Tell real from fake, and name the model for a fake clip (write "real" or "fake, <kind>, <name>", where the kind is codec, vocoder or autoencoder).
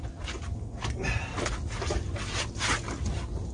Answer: real